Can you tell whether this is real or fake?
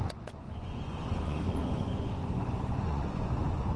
fake